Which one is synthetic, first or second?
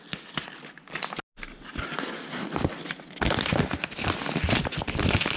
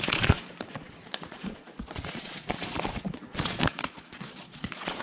second